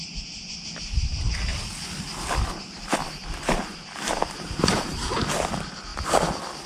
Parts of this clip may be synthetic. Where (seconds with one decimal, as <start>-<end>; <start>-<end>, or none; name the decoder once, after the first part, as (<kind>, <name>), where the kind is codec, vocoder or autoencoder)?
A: 3.7-4.5 (vocoder, BigVGAN v2); 5.9-6.7